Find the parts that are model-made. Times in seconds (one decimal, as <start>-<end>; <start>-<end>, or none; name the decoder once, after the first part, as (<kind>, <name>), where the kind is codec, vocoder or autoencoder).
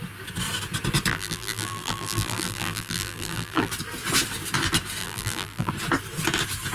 1.1-3.7 (vocoder, BigVGAN v2); 5.0-5.7